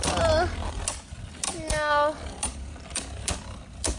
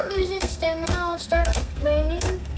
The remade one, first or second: second